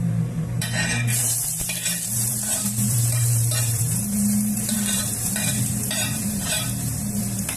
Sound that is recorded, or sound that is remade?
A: remade